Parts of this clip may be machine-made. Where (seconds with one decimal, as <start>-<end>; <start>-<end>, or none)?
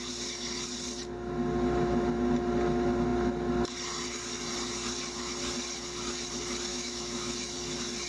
6.7-7.3